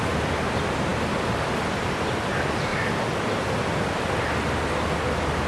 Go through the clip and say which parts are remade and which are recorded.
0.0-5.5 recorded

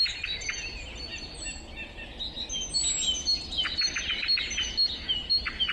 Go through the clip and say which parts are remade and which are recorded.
0.0-5.7 recorded

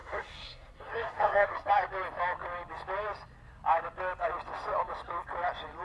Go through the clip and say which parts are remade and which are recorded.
0.0-1.7 remade; 1.7-5.8 recorded

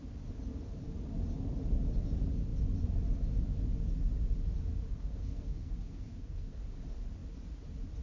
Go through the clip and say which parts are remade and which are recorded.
0.0-4.9 recorded; 4.9-6.6 remade; 6.6-8.0 recorded

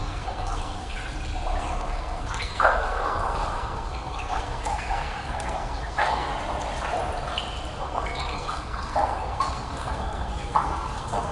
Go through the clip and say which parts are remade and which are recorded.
0.0-1.0 remade; 1.0-1.6 recorded; 1.6-6.3 remade; 6.3-7.8 recorded; 7.8-11.3 remade

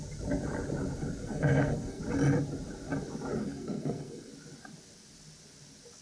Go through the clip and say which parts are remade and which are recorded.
0.0-1.2 recorded; 1.2-2.0 remade; 2.0-3.4 recorded; 3.4-4.3 remade; 4.3-6.0 recorded

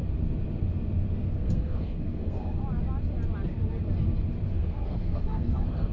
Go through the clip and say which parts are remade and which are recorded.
0.0-1.3 recorded; 1.3-2.6 remade; 2.6-4.5 recorded; 4.5-5.9 remade